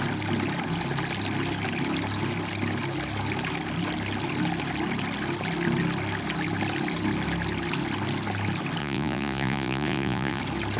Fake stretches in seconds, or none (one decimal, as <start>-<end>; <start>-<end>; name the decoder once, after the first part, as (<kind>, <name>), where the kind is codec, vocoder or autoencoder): 8.8-10.4 (vocoder, Vocos)